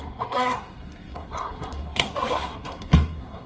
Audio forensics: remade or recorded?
remade